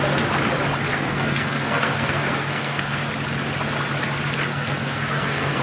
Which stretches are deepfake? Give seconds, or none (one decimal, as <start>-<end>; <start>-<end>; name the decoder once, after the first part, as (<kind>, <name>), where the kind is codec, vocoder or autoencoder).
0.9-3.1 (codec, SNAC); 4.5-5.6